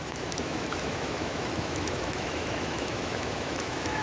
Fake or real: fake